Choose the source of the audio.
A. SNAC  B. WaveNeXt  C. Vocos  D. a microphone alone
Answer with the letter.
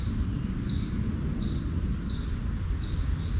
D